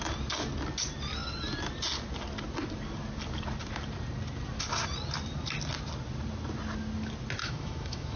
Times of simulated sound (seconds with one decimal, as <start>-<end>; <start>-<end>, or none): 7.4-8.2